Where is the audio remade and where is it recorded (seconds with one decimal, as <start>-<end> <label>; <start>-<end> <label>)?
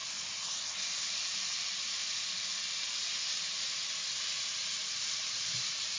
0.0-1.1 recorded; 1.1-3.8 remade; 3.8-4.7 recorded; 4.7-6.0 remade